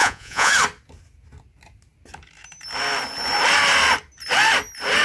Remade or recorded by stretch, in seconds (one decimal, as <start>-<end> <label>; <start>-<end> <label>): 0.0-0.5 remade; 0.5-5.0 recorded